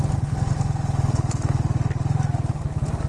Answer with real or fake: real